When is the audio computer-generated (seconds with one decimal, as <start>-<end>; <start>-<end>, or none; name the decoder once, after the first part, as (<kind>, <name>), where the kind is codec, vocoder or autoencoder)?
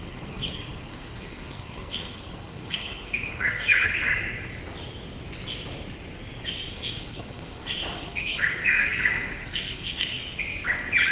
0.0-4.1 (codec, SNAC); 6.7-10.2